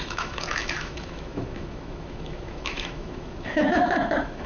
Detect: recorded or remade remade